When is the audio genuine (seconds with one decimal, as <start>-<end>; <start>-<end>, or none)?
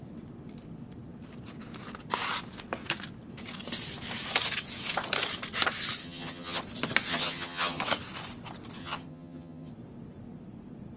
0.0-6.0; 6.6-7.1; 7.8-8.8; 9.7-11.0